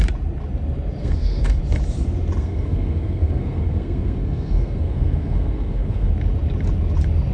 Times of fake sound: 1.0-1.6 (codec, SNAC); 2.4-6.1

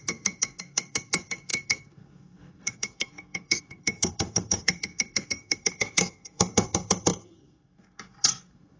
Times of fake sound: 0.0-8.8 (codec, SNAC)

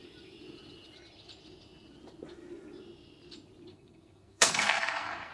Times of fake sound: 3.7-5.3 (codec, SNAC)

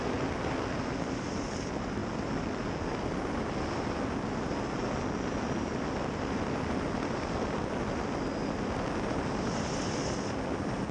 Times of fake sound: none

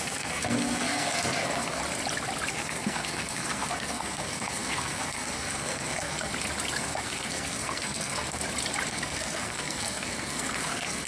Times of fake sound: 0.0-1.8 (codec, SNAC); 2.5-6.3; 6.8-8.4; 8.9-11.1

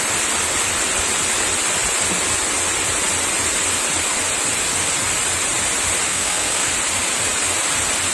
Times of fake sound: 6.1-6.7 (codec, SNAC)